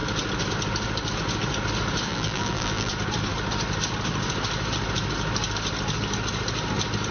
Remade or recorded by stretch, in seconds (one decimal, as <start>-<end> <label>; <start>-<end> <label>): 0.0-2.1 recorded; 2.1-2.9 remade; 2.9-7.1 recorded